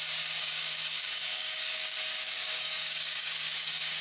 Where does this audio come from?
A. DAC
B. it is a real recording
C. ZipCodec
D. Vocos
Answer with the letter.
A